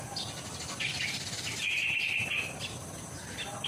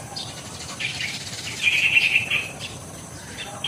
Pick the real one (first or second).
first